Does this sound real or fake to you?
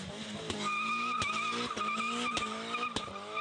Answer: real